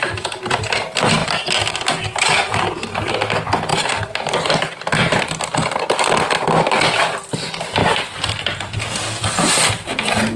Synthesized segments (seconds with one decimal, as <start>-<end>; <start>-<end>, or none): 3.7-5.2; 7.8-9.7